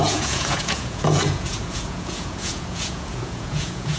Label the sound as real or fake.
fake